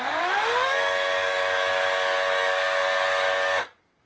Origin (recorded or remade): remade